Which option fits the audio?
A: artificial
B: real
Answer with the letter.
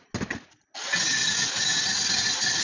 B